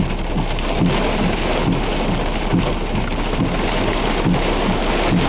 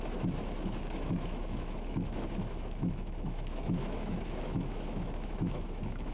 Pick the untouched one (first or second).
first